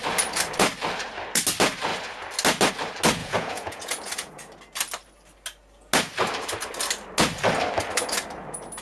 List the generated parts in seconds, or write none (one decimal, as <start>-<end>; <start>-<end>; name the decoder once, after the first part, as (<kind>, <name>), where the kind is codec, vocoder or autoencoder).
3.2-4.3 (vocoder, Vocos)